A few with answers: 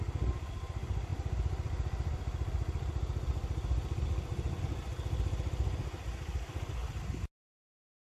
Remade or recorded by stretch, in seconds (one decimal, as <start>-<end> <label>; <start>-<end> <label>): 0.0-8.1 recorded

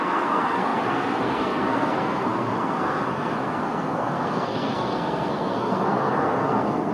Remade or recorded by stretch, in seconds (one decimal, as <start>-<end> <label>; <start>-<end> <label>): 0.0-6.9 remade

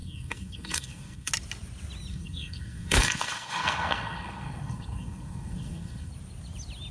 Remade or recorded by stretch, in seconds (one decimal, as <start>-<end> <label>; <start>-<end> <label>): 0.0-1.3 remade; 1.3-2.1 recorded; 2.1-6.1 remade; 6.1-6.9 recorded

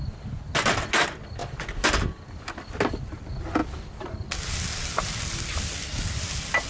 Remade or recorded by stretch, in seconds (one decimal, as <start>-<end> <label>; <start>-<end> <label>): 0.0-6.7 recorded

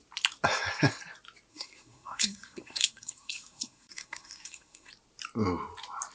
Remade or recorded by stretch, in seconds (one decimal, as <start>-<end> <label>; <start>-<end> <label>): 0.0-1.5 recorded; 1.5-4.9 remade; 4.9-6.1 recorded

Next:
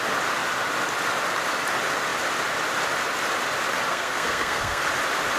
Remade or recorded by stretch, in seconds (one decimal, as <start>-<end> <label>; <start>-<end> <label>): 0.0-3.9 recorded; 3.9-4.8 remade; 4.8-5.4 recorded

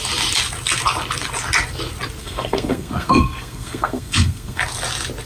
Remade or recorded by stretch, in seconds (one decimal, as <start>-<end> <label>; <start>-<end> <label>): 0.0-2.2 recorded; 2.2-4.6 remade; 4.6-5.3 recorded